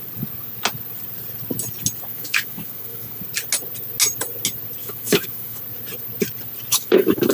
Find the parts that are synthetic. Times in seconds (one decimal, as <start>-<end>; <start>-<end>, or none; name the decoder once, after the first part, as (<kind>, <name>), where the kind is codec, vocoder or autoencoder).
2.1-3.2 (autoencoder, DAC-VAE); 4.8-5.6; 6.7-7.3